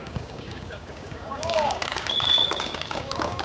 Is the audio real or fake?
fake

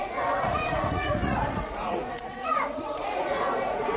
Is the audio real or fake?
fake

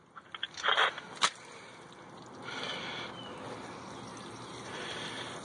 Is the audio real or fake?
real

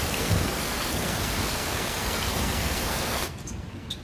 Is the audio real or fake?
fake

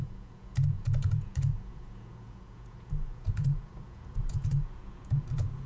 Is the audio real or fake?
fake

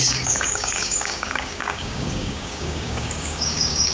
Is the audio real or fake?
fake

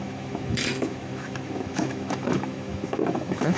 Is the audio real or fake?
fake